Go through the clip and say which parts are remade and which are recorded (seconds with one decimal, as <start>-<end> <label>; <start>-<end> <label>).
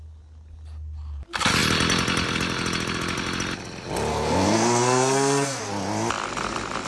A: 0.0-4.1 recorded; 4.1-5.6 remade; 5.6-6.9 recorded